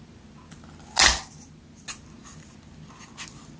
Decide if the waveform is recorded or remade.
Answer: recorded